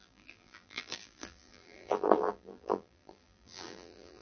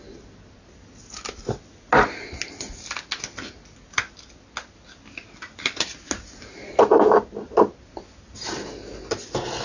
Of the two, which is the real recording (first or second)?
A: second